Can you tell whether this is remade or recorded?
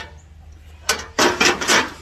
recorded